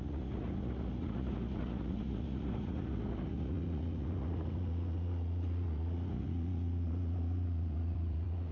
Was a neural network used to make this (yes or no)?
yes